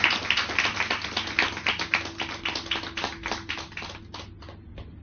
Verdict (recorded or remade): recorded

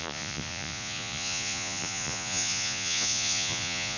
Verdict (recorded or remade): remade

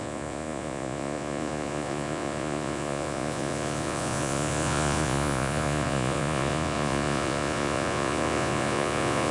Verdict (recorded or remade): remade